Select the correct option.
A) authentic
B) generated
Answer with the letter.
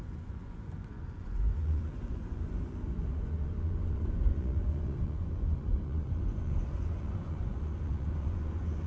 B